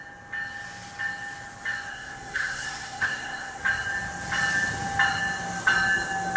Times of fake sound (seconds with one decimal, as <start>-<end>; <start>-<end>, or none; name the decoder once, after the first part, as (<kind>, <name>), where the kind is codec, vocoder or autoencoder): 1.9-3.6 (codec, SNAC)